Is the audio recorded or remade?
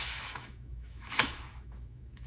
remade